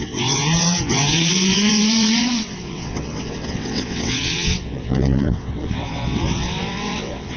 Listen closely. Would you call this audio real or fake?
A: fake